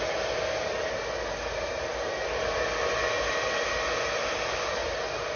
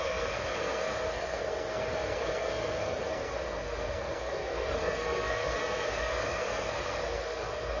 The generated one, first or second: second